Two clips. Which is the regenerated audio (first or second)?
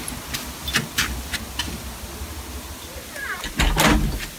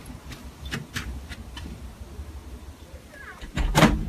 second